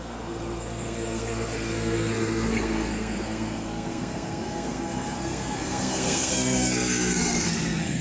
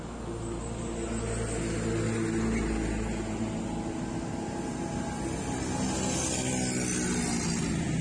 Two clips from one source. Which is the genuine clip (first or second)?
second